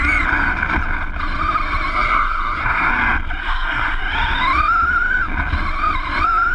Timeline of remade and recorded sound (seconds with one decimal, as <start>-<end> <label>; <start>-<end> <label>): 0.0-1.9 recorded; 1.9-2.9 remade; 2.9-3.4 recorded; 3.4-4.0 remade; 4.0-6.5 recorded